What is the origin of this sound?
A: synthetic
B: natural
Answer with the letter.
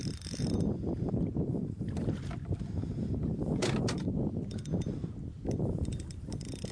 B